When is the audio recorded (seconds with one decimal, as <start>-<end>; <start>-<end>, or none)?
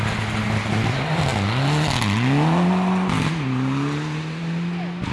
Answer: 0.0-5.1